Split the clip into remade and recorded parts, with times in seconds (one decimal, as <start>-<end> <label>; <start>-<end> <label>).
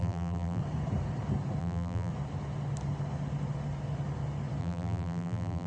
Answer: 0.0-0.6 remade; 0.6-1.6 recorded; 1.6-2.1 remade; 2.1-4.6 recorded; 4.6-5.7 remade